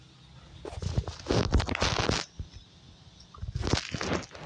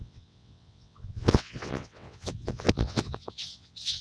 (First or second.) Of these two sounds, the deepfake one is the second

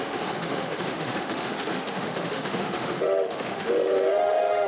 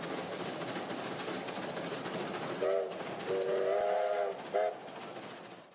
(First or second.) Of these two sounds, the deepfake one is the first